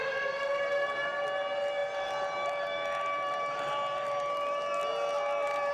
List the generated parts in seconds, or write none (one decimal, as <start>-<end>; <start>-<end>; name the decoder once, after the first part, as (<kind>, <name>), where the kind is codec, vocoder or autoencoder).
none